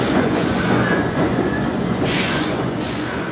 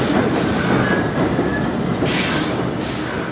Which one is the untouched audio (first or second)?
second